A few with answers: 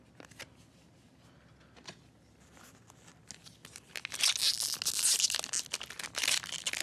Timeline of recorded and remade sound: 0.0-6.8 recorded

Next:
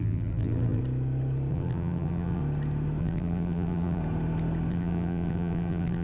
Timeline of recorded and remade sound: 0.0-0.8 remade; 0.8-1.5 recorded; 1.5-2.4 remade; 2.4-3.0 recorded; 3.0-4.0 remade; 4.0-4.7 recorded; 4.7-6.0 remade

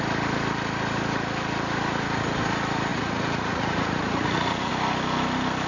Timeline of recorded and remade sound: 0.0-2.9 recorded; 2.9-4.7 remade; 4.7-5.7 recorded

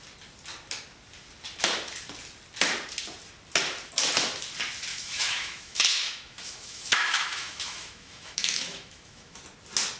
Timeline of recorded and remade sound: 0.0-4.9 recorded; 4.9-9.4 remade; 9.4-10.0 recorded

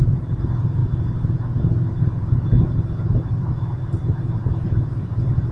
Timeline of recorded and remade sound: 0.0-0.8 remade; 0.8-3.3 recorded; 3.3-5.5 remade

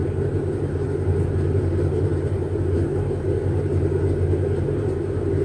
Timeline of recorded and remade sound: 0.0-5.4 recorded

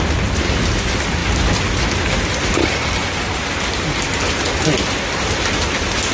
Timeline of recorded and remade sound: 0.0-6.1 recorded

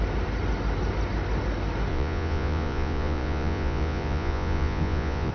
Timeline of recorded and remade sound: 0.0-1.9 recorded; 1.9-5.3 remade